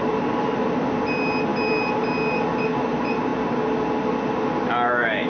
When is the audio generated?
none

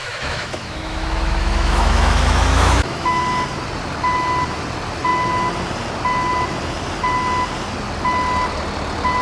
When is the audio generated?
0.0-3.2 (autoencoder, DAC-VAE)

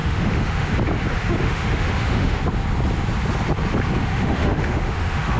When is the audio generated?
0.0-0.7 (autoencoder, DAC-VAE); 1.4-2.4; 4.1-5.4

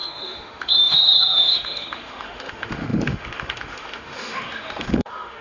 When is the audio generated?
0.0-5.4 (autoencoder, DAC-VAE)

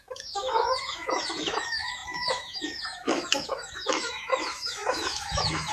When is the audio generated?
0.0-5.7 (autoencoder, DAC-VAE)